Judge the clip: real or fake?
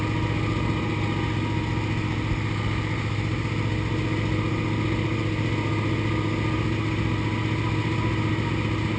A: real